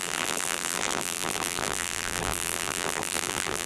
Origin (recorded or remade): remade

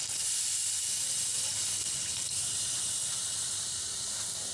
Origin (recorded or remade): recorded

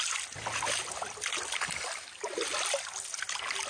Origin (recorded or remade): recorded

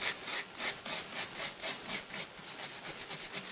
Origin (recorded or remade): recorded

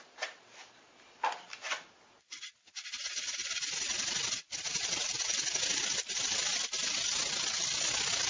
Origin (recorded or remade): recorded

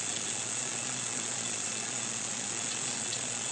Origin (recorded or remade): remade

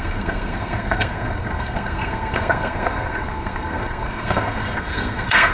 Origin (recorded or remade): remade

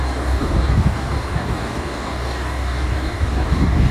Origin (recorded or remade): remade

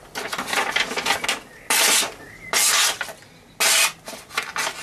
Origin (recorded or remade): recorded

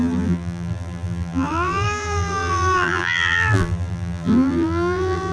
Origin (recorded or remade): remade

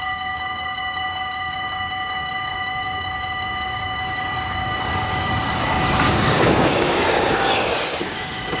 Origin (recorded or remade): remade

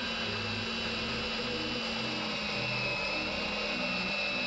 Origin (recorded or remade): recorded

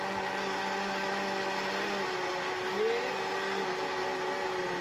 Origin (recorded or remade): recorded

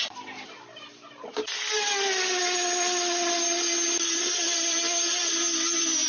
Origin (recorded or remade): recorded